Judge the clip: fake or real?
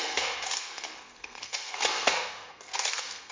fake